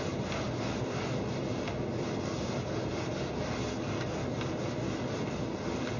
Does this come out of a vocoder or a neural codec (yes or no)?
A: no